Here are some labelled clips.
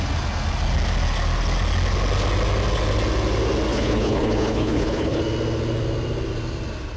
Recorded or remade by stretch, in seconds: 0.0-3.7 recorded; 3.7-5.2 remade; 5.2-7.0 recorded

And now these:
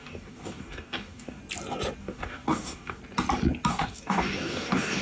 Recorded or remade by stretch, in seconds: 0.0-1.4 remade; 1.4-2.0 recorded; 2.0-3.0 remade; 3.0-3.7 recorded; 3.7-5.0 remade

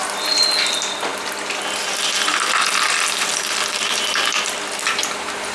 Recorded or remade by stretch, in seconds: 0.0-5.5 recorded

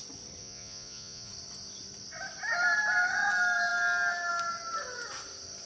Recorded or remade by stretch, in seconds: 0.0-0.4 recorded; 0.4-1.3 remade; 1.3-5.7 recorded

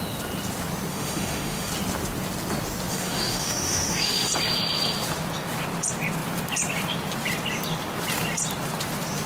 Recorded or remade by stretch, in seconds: 0.0-0.9 recorded; 0.9-1.7 remade; 1.7-2.9 recorded; 2.9-4.3 remade; 4.3-9.3 recorded

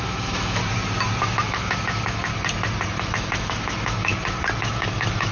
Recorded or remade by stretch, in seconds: 0.0-0.6 remade; 0.6-1.2 recorded; 1.2-2.3 remade; 2.3-3.0 recorded; 3.0-4.1 remade; 4.1-4.6 recorded; 4.6-5.3 remade

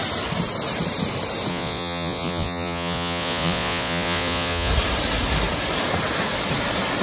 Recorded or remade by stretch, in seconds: 0.0-1.5 recorded; 1.5-4.7 remade; 4.7-7.0 recorded

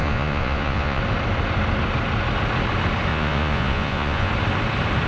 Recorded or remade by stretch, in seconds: 0.0-1.0 remade; 1.0-3.1 recorded; 3.1-4.3 remade; 4.3-5.1 recorded